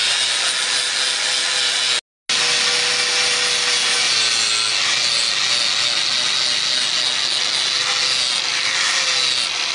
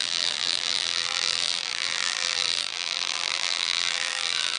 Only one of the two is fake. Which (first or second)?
second